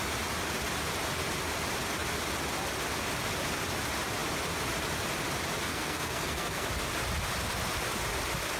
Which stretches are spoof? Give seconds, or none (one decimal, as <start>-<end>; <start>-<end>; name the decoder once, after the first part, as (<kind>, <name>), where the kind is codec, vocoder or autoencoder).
5.7-6.7 (codec, SNAC)